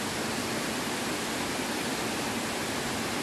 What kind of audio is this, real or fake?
real